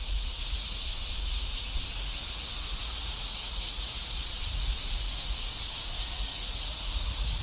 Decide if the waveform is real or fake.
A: fake